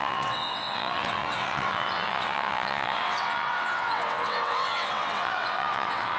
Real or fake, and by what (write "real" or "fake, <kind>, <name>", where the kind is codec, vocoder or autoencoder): fake, vocoder, WaveNeXt